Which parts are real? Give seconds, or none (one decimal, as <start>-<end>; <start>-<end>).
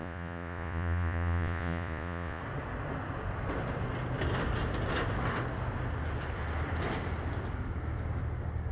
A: 2.4-8.7